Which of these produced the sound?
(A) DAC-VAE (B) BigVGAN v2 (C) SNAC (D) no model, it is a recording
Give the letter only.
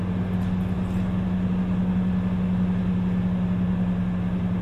D